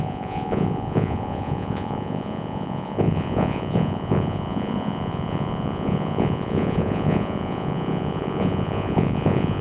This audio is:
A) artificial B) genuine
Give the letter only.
A